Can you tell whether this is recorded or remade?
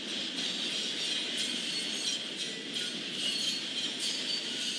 recorded